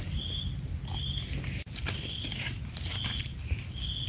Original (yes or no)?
yes